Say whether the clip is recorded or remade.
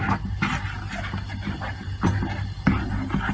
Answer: recorded